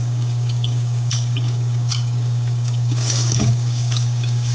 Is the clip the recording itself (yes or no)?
no